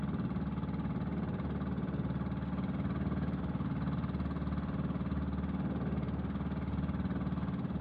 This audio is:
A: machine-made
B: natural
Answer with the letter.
B